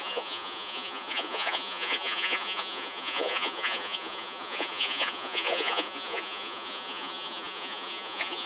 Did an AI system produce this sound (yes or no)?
yes